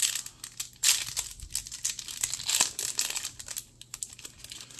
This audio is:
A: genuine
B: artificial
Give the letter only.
A